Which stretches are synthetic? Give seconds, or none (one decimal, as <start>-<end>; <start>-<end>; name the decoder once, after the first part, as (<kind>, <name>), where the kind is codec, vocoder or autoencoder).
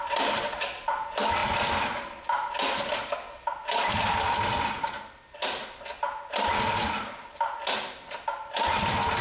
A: none